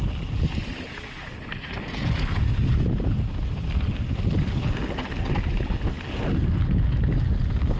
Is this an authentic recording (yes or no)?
yes